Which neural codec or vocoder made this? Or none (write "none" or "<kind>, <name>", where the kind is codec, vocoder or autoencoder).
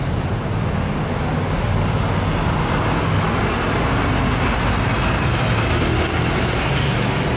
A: none